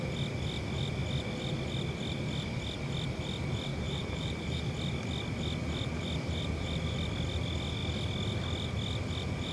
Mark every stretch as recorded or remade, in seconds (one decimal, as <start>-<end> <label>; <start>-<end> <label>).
0.0-3.7 recorded; 3.7-4.6 remade; 4.6-9.5 recorded